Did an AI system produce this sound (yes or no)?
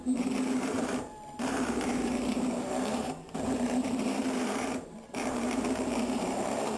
yes